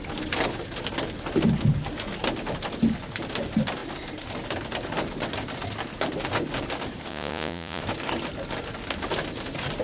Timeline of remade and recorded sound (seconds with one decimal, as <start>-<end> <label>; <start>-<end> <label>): 0.0-7.1 recorded; 7.1-7.8 remade; 7.8-9.8 recorded